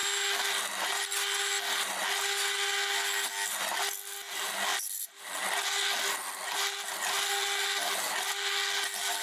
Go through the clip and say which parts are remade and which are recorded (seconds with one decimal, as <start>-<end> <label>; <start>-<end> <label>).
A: 0.0-9.2 recorded

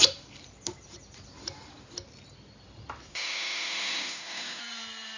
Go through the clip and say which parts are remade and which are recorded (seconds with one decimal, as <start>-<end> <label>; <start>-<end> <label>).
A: 0.0-3.1 recorded; 3.1-4.6 remade; 4.6-5.2 recorded

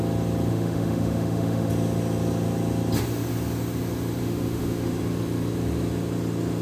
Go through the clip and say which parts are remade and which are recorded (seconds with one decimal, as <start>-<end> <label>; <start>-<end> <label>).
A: 0.0-0.5 recorded; 0.5-1.7 remade; 1.7-4.2 recorded; 4.2-5.0 remade; 5.0-6.6 recorded

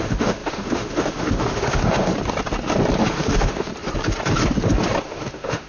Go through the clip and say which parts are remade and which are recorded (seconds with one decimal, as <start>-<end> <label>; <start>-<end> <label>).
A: 0.0-2.1 remade; 2.1-3.1 recorded; 3.1-3.7 remade; 3.7-5.0 recorded; 5.0-5.7 remade

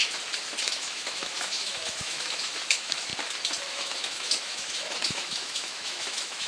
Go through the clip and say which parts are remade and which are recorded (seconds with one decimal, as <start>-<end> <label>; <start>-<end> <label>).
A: 0.0-0.6 recorded; 0.6-3.1 remade; 3.1-3.7 recorded; 3.7-6.5 remade

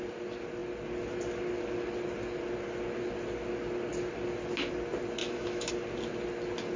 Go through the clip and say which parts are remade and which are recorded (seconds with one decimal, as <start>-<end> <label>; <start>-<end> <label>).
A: 0.0-5.2 recorded; 5.2-5.7 remade; 5.7-6.8 recorded